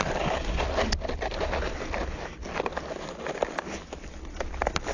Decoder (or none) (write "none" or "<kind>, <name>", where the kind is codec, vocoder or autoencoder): none